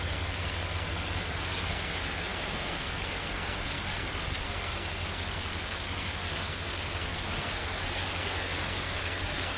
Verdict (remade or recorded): remade